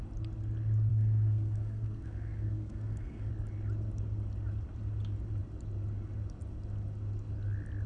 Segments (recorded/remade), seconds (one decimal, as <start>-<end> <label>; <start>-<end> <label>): 0.0-0.9 recorded; 0.9-3.3 remade; 3.3-7.9 recorded